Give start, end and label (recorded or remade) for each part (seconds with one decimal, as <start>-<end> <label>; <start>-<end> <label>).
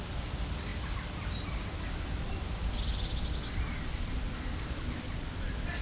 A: 0.0-5.8 recorded